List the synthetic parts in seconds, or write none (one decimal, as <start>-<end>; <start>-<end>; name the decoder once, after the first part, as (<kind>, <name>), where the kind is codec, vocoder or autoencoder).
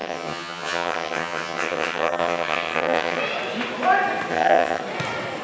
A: 0.0-3.2 (vocoder, HiFi-GAN); 4.3-4.8